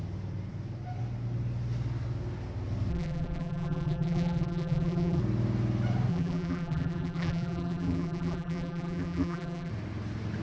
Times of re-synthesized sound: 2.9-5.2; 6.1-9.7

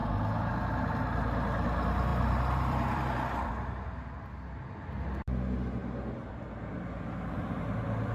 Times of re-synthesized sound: 2.1-3.5

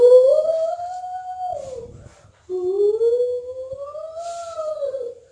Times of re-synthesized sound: 0.0-1.5; 4.7-5.3

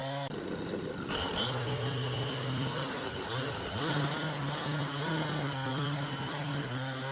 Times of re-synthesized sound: 0.0-4.1; 5.7-6.5

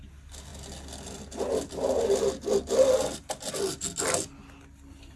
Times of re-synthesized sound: none